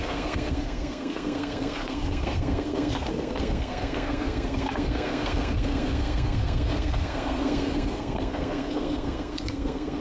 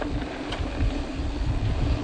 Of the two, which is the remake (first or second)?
first